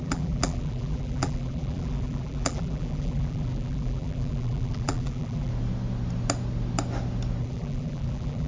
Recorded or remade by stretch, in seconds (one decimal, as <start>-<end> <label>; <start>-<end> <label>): 0.0-5.5 remade; 5.5-7.4 recorded; 7.4-8.5 remade